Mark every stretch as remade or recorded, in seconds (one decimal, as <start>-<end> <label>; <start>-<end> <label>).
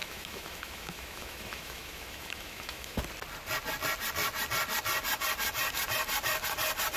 0.0-3.0 remade; 3.0-7.0 recorded